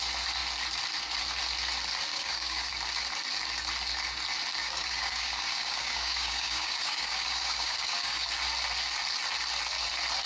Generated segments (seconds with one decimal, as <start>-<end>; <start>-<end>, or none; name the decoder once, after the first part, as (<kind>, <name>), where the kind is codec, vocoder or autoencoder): 2.1-2.7 (codec, DAC); 4.6-8.3